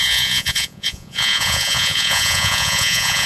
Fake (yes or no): yes